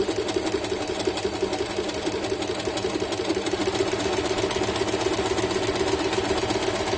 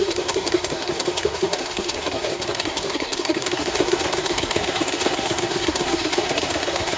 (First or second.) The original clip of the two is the first